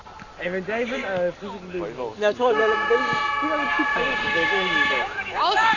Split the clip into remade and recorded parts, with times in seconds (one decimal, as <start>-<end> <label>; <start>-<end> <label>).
0.0-2.1 recorded; 2.1-2.9 remade; 2.9-3.9 recorded; 3.9-5.8 remade